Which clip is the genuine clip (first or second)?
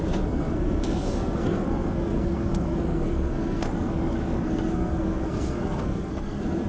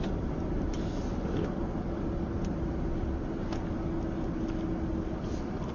second